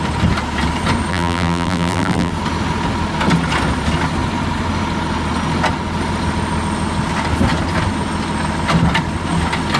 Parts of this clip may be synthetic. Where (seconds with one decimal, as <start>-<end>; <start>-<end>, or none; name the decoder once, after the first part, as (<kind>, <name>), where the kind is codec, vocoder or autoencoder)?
1.1-2.3 (vocoder, BigVGAN v2)